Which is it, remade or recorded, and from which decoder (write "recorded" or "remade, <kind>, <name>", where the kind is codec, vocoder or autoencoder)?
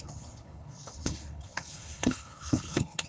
remade, codec, HILCodec